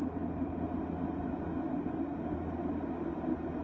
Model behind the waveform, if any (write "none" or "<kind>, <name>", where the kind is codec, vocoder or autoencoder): none